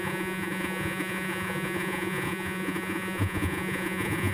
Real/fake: fake